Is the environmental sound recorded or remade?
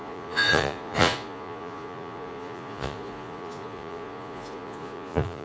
remade